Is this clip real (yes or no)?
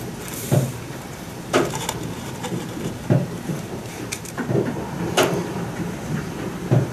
no